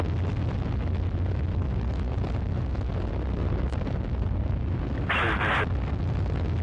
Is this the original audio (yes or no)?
yes